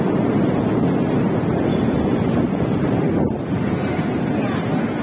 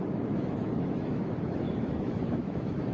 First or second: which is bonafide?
first